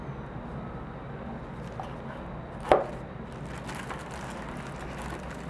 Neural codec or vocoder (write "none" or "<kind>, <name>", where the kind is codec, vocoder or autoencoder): none